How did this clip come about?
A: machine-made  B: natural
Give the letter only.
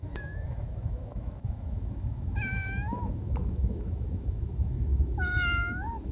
A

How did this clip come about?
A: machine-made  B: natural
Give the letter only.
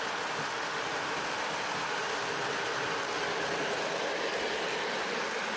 B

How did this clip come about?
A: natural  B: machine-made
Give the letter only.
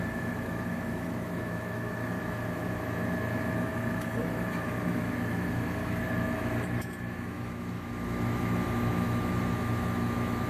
B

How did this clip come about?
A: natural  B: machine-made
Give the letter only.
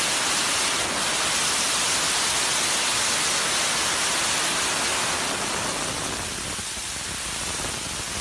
A